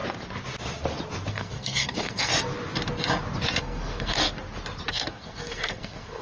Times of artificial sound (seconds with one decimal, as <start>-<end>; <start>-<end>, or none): 1.3-2.3; 3.6-4.2; 4.9-6.2